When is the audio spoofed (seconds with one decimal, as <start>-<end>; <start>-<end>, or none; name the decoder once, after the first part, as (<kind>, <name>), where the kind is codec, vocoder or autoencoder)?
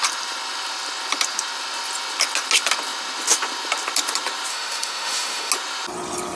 4.5-5.5 (autoencoder, DAC-VAE)